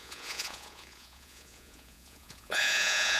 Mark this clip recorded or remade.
remade